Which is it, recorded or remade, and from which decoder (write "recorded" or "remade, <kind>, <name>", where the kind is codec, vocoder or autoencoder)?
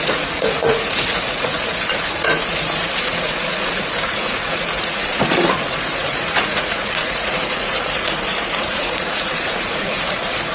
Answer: remade, vocoder, Vocos